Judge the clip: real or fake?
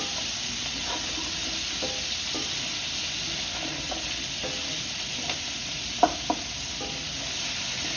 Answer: real